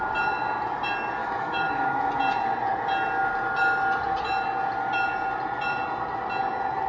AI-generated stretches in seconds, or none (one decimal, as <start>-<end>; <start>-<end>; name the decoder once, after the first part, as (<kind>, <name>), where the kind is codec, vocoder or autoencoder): 1.2-2.1 (autoencoder, DAC-VAE)